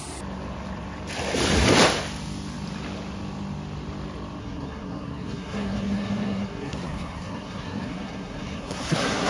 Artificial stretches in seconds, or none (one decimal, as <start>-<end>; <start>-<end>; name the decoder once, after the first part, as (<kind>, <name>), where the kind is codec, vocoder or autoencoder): 4.4-9.3 (codec, SNAC)